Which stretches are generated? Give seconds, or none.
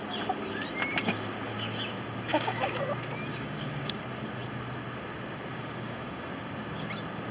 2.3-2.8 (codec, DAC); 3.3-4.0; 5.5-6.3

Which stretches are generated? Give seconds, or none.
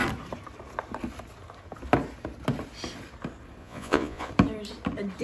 3.6-4.3 (vocoder, Vocos)